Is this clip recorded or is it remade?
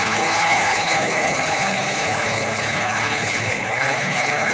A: remade